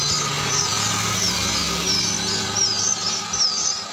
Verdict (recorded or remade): recorded